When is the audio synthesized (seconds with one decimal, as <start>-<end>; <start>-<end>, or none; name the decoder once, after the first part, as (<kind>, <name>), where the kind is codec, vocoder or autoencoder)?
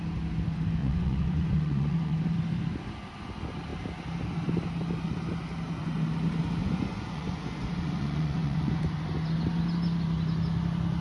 0.8-2.2 (vocoder, Vocos); 6.6-8.8